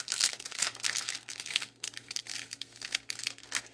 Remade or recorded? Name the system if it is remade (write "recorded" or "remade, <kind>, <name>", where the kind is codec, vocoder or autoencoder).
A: remade, codec, SNAC